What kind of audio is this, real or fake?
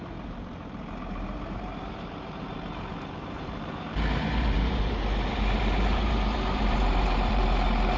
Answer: fake